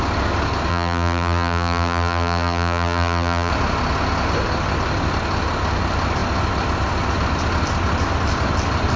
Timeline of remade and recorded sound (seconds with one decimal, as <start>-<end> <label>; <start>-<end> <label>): 0.0-0.7 recorded; 0.7-3.5 remade; 3.5-9.0 recorded

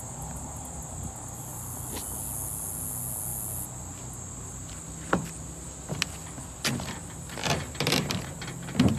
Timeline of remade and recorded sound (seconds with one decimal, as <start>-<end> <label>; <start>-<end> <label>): 0.0-7.4 recorded; 7.4-8.2 remade; 8.2-9.0 recorded

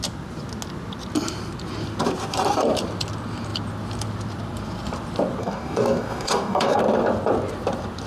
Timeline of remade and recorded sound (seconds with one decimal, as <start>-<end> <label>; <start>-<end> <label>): 0.0-5.4 recorded; 5.4-6.8 remade; 6.8-8.1 recorded

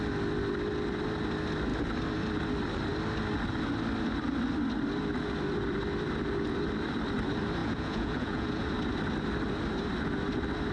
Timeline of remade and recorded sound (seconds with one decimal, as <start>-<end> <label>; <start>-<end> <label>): 0.0-7.6 recorded; 7.6-8.7 remade; 8.7-10.7 recorded

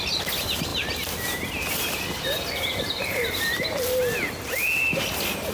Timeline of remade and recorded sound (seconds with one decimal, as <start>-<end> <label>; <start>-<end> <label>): 0.0-0.7 recorded; 0.7-4.0 remade; 4.0-5.5 recorded

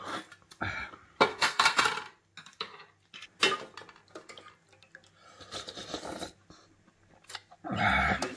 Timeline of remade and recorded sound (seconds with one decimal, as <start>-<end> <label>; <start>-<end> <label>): 0.0-1.3 recorded; 1.3-1.8 remade; 1.8-8.4 recorded